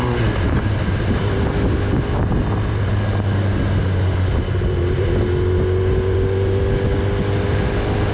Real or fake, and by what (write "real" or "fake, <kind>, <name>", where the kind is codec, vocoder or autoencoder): real